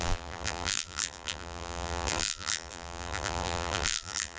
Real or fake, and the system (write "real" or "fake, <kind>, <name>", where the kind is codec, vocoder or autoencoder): fake, vocoder, BigVGAN v2